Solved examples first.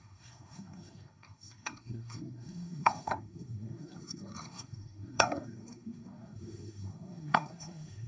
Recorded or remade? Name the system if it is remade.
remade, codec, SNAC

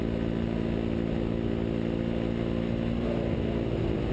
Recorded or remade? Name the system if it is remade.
recorded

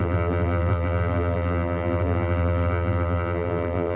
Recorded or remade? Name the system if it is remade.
remade, vocoder, BigVGAN v2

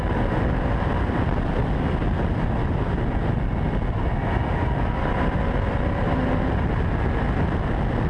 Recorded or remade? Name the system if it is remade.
recorded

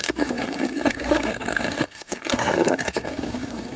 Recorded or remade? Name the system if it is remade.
remade, codec, SNAC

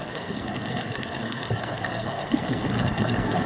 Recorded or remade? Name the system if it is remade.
remade, codec, SNAC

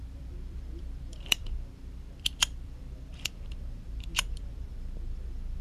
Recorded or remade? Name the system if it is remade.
remade, vocoder, BigVGAN v2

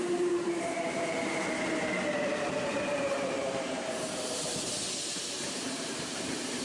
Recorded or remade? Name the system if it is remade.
remade, vocoder, BigVGAN v2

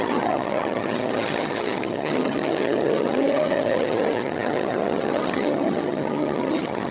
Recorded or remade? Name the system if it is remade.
remade, vocoder, HiFi-GAN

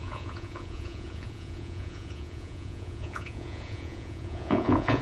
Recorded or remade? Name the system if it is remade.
remade, vocoder, Vocos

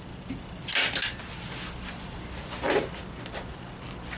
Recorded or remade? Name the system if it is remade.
recorded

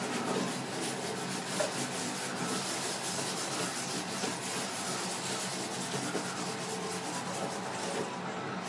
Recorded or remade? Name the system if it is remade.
recorded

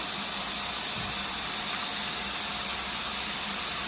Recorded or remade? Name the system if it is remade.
recorded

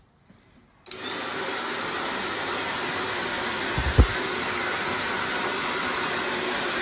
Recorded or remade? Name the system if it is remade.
recorded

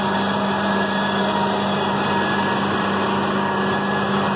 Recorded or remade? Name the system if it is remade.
recorded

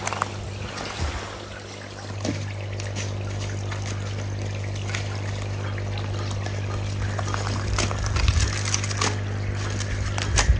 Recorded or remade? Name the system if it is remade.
recorded